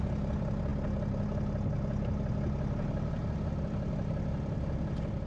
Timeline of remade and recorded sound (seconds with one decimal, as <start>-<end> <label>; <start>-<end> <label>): 0.0-5.3 recorded